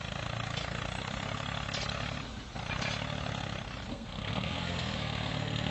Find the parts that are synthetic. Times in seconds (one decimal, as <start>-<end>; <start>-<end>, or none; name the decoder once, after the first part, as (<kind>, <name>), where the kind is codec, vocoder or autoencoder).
3.9-5.7 (codec, SNAC)